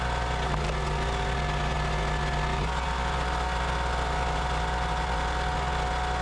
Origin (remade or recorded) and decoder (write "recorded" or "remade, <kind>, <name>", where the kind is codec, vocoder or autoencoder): recorded